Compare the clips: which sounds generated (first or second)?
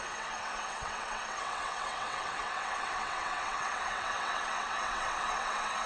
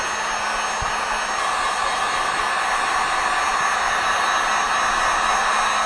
first